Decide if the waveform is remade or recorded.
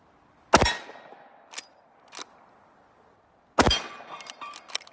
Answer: recorded